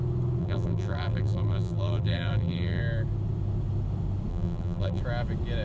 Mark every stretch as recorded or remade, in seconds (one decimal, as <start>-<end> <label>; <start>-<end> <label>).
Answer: 0.0-0.4 recorded; 0.4-2.8 remade; 2.8-4.3 recorded; 4.3-5.0 remade; 5.0-5.6 recorded